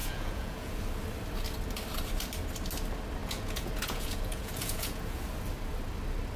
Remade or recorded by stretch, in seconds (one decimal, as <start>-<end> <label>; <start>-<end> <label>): 0.0-0.7 remade; 0.7-3.2 recorded; 3.2-5.2 remade; 5.2-6.4 recorded